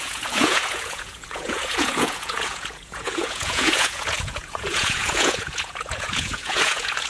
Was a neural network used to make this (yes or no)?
yes